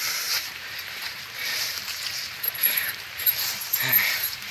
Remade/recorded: remade